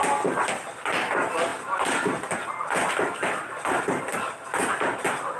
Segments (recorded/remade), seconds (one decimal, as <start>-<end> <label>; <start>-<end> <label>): 0.0-5.4 recorded